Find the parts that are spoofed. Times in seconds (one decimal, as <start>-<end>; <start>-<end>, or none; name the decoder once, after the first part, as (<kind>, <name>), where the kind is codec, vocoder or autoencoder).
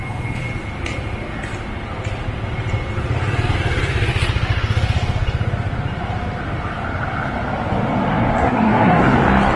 8.4-9.0 (codec, SNAC)